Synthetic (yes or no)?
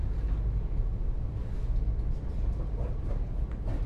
no